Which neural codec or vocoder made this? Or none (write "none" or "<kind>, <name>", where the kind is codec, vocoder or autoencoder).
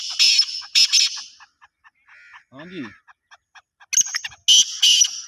none